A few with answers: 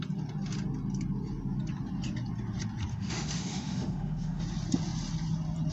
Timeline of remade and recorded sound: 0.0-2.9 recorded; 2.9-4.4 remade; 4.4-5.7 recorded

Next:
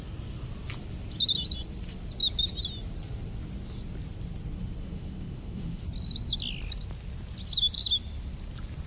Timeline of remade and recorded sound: 0.0-4.8 recorded; 4.8-5.8 remade; 5.8-8.9 recorded